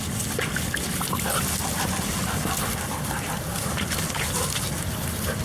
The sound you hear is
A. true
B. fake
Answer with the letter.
A